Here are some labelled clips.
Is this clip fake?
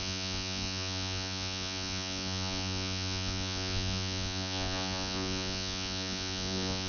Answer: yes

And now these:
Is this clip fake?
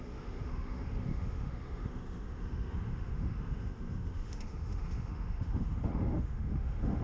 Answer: yes